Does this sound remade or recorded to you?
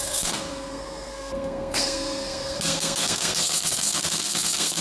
remade